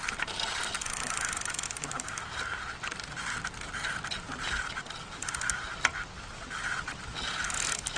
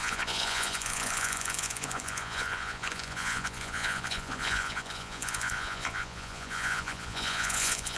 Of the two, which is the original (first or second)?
first